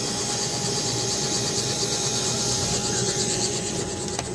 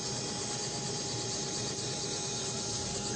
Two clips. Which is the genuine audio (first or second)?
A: second